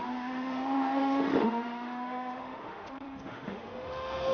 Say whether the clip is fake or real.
fake